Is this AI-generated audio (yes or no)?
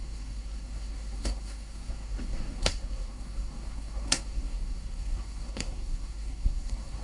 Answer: yes